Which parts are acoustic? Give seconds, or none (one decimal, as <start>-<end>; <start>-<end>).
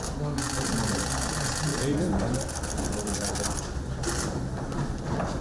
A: 0.0-1.7; 4.9-5.4